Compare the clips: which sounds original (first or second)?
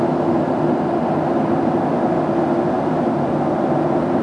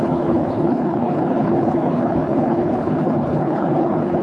first